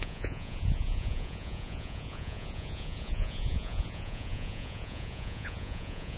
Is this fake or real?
fake